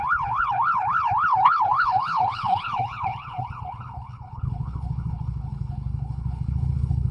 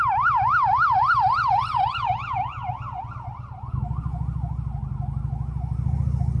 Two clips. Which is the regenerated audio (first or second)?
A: first